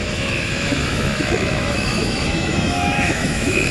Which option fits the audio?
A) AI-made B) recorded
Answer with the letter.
A